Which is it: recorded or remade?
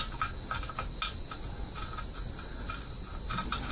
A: recorded